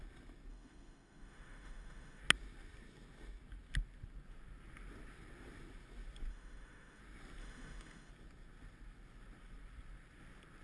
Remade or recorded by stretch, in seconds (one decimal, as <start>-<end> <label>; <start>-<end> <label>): 0.0-0.5 recorded; 0.5-2.2 remade; 2.2-6.3 recorded; 6.3-7.0 remade; 7.0-7.4 recorded; 7.4-8.1 remade; 8.1-10.6 recorded